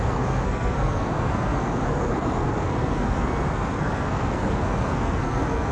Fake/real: fake